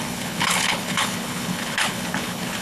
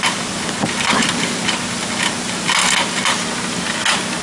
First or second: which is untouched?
second